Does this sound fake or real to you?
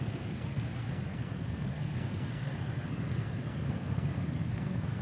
fake